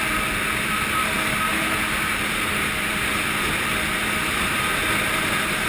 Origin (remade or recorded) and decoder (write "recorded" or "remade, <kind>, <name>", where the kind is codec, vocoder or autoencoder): recorded